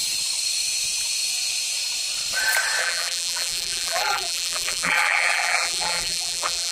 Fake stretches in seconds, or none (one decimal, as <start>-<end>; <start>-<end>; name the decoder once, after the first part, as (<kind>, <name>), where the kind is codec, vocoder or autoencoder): 2.8-6.7 (vocoder, BigVGAN v2)